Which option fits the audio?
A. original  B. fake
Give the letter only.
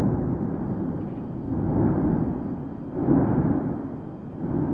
A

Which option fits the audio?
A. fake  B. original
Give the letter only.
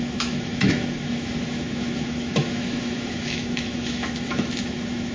A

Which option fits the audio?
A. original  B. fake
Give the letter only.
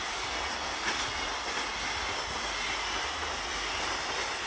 A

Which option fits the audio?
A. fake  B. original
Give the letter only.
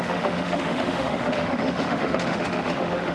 A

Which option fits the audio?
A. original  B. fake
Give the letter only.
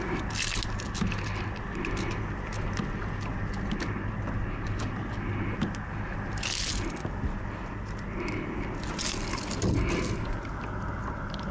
A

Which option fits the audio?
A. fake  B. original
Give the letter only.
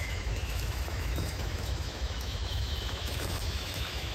A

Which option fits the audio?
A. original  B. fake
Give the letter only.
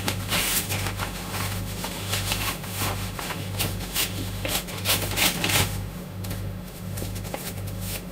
B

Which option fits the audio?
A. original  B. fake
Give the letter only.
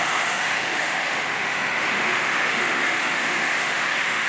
B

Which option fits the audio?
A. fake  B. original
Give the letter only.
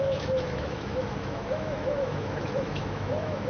A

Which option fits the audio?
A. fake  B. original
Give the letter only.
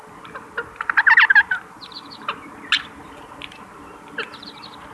B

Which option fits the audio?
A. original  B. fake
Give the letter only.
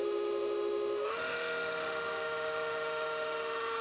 B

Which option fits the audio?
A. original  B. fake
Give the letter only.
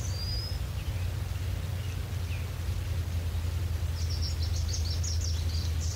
A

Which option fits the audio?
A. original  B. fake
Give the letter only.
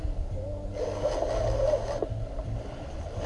A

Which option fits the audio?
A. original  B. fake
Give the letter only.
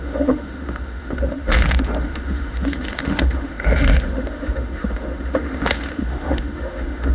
B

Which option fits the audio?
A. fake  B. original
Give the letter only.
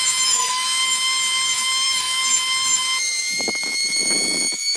A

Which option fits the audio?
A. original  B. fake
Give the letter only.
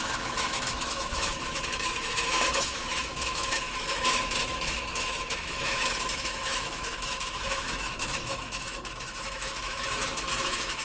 B